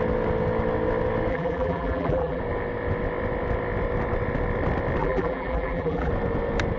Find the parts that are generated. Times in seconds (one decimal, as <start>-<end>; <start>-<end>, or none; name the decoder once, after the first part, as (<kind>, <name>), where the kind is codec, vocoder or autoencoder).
1.3-2.4 (vocoder, BigVGAN v2); 5.0-6.1